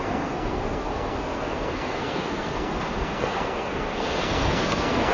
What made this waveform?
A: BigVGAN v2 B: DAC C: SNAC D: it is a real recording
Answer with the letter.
C